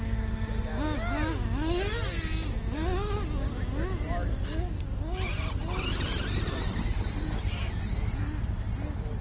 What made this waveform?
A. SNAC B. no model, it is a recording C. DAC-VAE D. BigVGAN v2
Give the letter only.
B